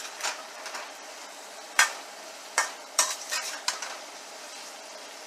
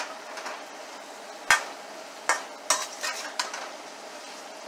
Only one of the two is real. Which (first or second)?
second